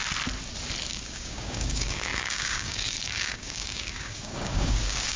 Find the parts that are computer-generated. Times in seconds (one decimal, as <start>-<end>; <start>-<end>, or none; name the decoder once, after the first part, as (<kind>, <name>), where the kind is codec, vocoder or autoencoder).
0.9-5.2 (codec, DAC)